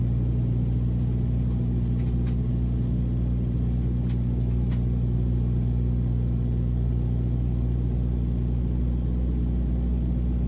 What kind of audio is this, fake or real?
real